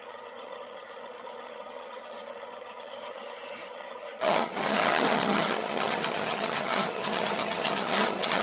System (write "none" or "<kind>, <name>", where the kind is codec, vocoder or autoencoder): vocoder, HiFi-GAN